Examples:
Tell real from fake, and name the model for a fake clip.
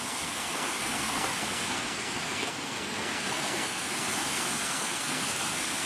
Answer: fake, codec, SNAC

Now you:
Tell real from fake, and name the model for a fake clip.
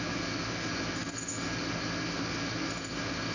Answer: real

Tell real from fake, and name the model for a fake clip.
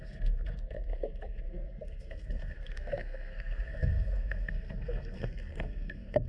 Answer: fake, codec, SNAC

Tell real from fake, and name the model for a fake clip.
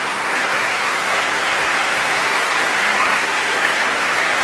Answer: fake, codec, SNAC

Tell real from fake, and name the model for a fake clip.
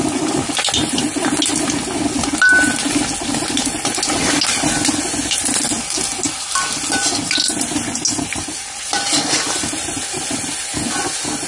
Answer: real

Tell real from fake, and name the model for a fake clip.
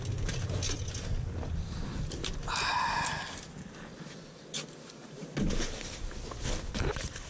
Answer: real